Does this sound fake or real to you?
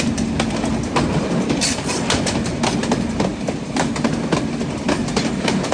real